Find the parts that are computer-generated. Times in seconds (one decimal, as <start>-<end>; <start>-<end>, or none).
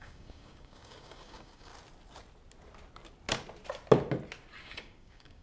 0.0-1.7; 4.6-5.4